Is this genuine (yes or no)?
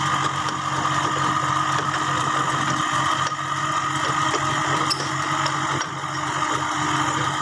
yes